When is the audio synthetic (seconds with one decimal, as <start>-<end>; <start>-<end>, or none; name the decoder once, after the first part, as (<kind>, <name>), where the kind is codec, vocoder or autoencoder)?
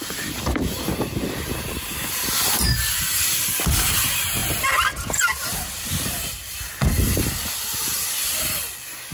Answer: none